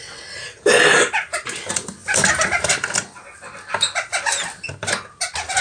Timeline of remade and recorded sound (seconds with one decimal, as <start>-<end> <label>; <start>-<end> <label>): 0.0-5.6 recorded